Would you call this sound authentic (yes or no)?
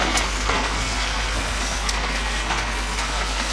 no